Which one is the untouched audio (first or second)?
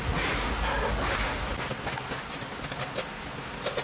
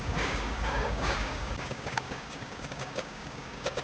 first